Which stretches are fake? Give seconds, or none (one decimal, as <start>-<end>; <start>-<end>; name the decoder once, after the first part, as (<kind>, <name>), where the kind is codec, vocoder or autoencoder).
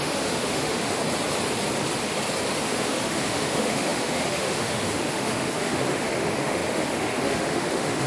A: 0.0-1.0 (autoencoder, DAC-VAE); 2.5-8.1